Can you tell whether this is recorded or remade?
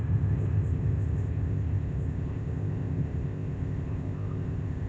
remade